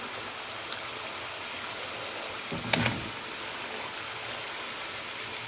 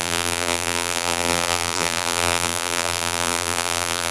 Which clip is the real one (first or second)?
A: first